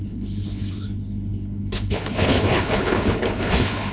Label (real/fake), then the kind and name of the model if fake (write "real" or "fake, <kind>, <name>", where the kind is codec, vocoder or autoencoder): fake, codec, HILCodec